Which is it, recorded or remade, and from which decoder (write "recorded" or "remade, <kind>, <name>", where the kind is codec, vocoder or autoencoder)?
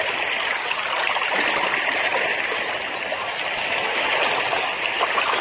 recorded